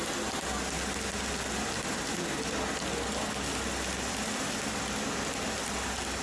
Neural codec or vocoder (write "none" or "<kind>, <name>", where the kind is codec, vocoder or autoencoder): none